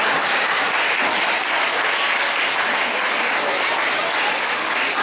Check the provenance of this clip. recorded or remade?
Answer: recorded